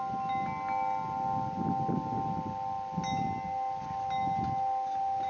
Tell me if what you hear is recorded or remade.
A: recorded